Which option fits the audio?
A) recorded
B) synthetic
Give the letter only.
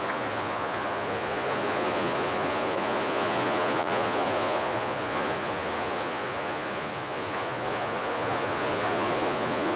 B